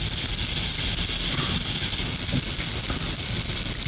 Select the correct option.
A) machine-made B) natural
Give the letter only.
B